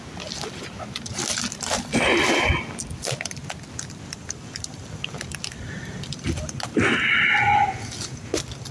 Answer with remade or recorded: recorded